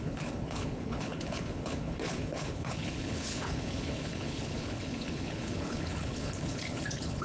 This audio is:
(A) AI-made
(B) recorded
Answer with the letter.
A